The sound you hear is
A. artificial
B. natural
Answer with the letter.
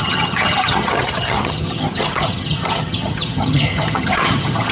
A